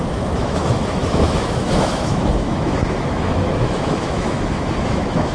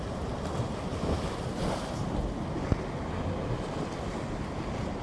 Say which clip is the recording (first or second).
second